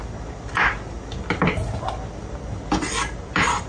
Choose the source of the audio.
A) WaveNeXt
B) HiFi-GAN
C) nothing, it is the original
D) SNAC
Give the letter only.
C